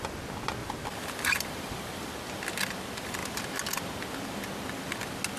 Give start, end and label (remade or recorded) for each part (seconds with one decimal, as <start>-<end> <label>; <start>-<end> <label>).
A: 0.0-0.6 recorded; 0.6-2.1 remade; 2.1-5.4 recorded